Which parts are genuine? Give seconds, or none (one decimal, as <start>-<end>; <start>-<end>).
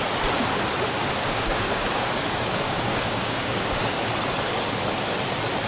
0.0-1.0; 4.1-5.7